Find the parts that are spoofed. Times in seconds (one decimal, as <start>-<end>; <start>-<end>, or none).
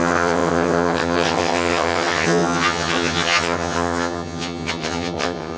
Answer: 0.0-5.6